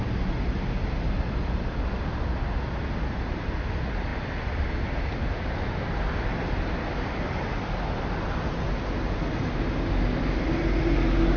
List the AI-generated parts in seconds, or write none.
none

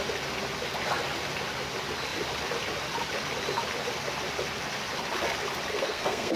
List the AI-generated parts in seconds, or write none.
5.7-6.4 (codec, SNAC)

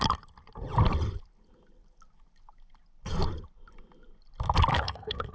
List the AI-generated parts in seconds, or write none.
4.7-5.3 (codec, SNAC)